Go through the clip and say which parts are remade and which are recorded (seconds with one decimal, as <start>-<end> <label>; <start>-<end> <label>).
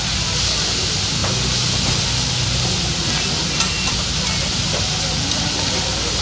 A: 0.0-6.2 recorded